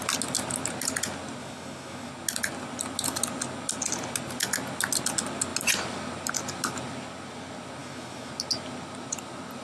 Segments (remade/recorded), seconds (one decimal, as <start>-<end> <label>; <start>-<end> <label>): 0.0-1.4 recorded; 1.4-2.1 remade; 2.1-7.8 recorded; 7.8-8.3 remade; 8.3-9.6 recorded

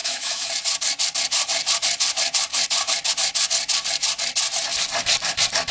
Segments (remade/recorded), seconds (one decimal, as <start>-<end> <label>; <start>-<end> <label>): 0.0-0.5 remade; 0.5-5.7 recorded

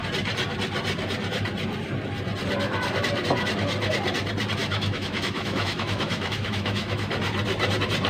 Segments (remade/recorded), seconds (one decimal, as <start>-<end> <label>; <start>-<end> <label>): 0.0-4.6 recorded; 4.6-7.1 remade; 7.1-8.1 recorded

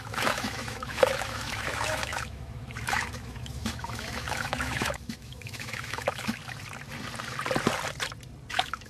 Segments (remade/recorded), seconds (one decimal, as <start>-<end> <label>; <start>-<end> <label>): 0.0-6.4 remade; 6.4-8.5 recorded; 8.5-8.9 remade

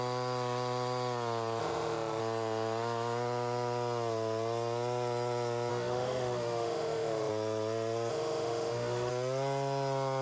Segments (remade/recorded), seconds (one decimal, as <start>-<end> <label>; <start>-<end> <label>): 0.0-1.6 recorded; 1.6-2.2 remade; 2.2-5.7 recorded; 5.7-7.3 remade; 7.3-8.1 recorded; 8.1-9.1 remade; 9.1-10.2 recorded

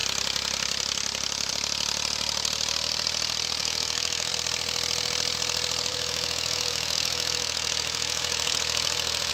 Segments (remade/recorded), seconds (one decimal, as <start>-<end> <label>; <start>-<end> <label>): 0.0-3.6 recorded; 3.6-4.3 remade; 4.3-5.9 recorded; 5.9-9.3 remade

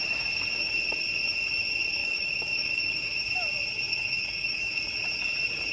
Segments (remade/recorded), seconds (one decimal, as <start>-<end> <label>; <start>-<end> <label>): 0.0-2.0 recorded; 2.0-3.2 remade; 3.2-3.9 recorded; 3.9-4.8 remade; 4.8-5.7 recorded